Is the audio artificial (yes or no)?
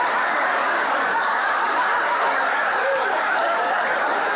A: yes